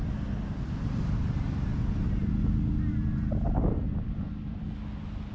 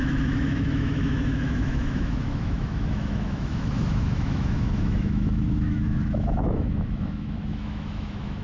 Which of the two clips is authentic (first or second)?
first